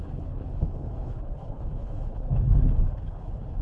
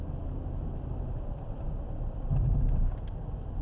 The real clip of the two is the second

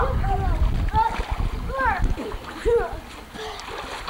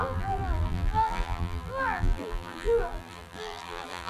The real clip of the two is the first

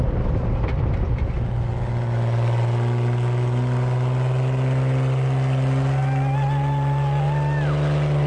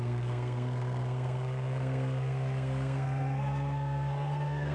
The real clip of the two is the first